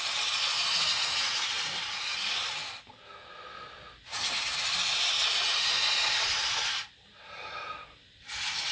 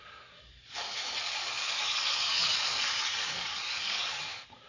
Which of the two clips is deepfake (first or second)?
second